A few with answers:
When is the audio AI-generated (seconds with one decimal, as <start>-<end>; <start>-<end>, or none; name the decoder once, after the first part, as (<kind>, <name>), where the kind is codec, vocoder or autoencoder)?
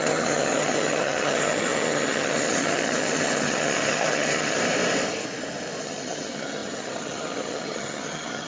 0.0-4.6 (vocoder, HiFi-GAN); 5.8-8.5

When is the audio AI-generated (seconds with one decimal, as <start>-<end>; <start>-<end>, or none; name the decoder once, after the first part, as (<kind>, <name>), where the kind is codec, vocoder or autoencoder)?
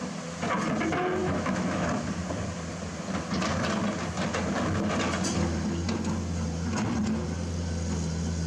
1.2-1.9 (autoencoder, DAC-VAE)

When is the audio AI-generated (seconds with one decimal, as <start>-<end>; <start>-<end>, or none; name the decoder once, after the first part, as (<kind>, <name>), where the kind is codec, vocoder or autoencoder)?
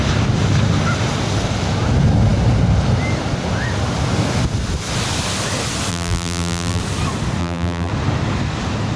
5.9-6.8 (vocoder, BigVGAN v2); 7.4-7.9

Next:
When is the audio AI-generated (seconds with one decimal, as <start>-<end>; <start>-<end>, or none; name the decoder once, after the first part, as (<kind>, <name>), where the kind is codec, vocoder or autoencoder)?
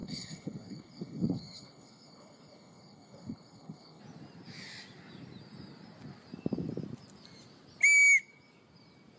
0.0-4.0 (codec, HILCodec)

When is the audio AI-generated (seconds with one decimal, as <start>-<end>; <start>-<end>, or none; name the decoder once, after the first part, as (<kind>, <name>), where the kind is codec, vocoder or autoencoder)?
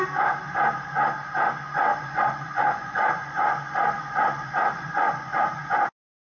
1.9-5.6 (vocoder, Vocos)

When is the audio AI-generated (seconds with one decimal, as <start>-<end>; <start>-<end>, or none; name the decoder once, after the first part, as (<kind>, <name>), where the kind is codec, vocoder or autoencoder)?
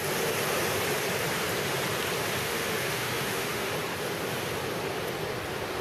2.4-3.7 (autoencoder, DAC-VAE)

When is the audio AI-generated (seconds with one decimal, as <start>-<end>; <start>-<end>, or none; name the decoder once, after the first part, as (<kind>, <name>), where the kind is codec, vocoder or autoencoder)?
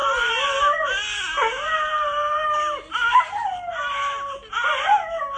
none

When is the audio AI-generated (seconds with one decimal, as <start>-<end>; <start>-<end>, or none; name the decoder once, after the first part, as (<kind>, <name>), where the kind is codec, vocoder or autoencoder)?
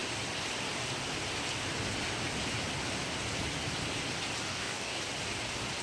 4.5-5.0 (codec, DAC)